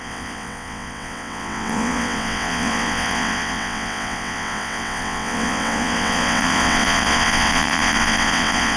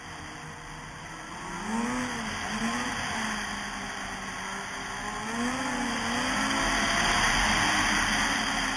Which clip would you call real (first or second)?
second